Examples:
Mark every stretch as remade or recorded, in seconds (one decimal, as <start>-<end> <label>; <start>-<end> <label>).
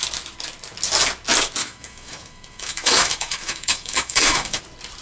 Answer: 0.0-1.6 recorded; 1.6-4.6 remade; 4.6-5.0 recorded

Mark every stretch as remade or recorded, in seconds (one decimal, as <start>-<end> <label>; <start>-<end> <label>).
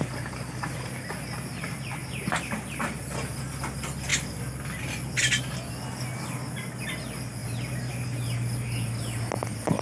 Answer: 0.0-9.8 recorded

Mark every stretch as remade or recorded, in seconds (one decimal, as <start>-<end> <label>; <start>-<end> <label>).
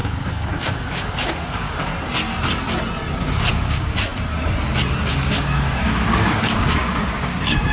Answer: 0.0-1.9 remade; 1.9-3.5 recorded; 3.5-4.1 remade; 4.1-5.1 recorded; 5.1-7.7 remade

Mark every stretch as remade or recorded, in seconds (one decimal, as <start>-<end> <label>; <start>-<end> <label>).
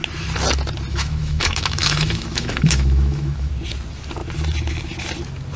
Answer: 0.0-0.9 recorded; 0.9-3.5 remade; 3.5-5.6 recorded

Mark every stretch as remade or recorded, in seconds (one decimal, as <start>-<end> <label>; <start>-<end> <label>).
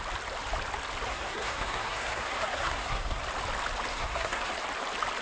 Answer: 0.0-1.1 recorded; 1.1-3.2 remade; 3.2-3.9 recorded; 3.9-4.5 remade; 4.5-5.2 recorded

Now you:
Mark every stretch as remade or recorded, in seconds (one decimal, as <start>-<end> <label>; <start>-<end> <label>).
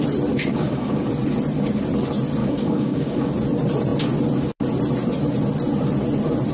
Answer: 0.0-0.5 recorded; 0.5-1.1 remade; 1.1-2.4 recorded; 2.4-3.3 remade; 3.3-6.5 recorded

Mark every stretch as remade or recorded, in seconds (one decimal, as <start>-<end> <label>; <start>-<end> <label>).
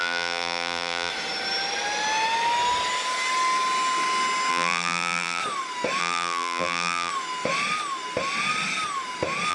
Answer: 0.0-1.1 remade; 1.1-4.5 recorded; 4.5-5.4 remade; 5.4-6.0 recorded; 6.0-7.1 remade; 7.1-9.5 recorded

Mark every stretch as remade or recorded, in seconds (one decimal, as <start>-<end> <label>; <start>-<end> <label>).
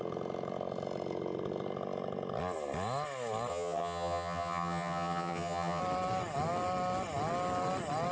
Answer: 0.0-3.5 recorded; 3.5-5.8 remade; 5.8-8.1 recorded